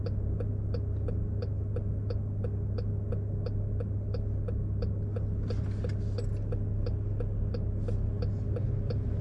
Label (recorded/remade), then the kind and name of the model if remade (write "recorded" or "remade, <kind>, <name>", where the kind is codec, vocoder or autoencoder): recorded